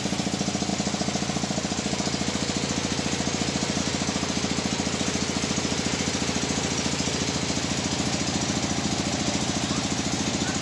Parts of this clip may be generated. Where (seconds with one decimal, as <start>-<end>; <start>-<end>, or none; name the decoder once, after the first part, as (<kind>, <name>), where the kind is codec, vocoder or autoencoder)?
none